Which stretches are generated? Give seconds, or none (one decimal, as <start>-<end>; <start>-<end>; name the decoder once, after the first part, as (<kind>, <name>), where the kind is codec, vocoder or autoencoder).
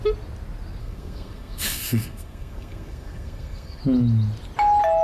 0.8-3.8 (codec, SNAC)